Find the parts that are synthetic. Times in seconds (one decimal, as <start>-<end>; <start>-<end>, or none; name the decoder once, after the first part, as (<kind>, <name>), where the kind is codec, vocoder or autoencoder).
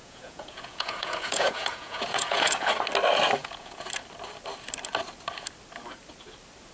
0.0-2.7 (vocoder, Vocos); 3.4-3.9